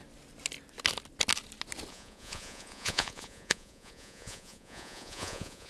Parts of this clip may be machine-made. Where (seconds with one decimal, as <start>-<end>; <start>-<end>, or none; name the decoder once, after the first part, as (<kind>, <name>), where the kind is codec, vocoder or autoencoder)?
1.9-5.7 (vocoder, Vocos)